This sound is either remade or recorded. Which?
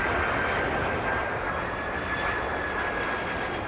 recorded